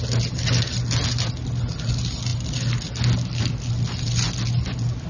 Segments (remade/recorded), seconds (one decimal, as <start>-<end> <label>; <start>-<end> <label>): 0.0-5.1 recorded